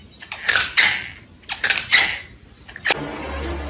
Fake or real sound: real